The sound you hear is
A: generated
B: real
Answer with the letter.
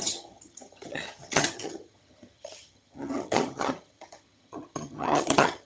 A